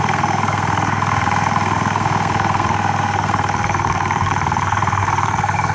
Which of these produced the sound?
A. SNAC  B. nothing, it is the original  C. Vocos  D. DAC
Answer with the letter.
A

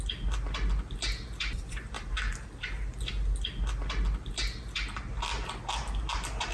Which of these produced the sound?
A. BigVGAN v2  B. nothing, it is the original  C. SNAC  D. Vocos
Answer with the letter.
B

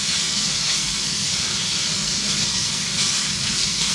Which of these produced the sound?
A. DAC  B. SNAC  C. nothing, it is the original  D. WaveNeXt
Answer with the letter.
B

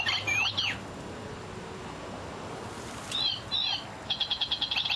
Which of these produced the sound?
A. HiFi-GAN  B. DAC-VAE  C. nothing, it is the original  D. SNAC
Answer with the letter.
C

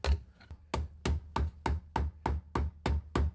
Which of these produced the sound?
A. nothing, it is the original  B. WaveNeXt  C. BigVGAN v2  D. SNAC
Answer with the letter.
A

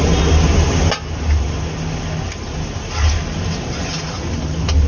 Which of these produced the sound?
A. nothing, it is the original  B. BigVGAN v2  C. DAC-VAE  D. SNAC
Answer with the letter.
A